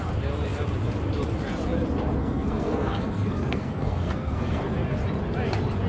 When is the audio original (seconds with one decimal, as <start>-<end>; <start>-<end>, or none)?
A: 0.0-2.2; 4.6-5.9